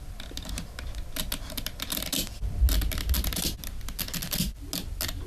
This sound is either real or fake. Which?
real